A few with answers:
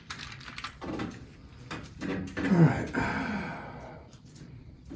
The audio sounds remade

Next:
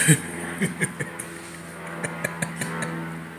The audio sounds recorded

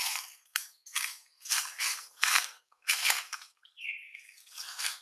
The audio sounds remade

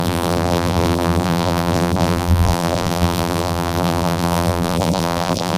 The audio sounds remade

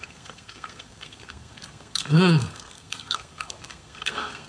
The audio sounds remade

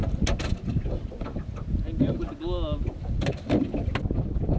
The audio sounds recorded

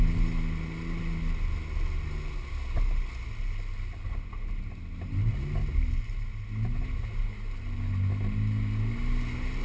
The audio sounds recorded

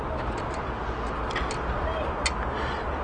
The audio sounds recorded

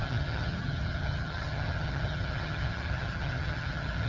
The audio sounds remade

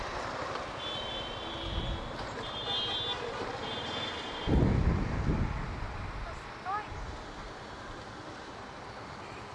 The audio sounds recorded